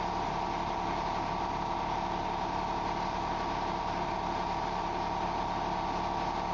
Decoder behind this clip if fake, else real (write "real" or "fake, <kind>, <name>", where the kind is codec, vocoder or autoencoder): real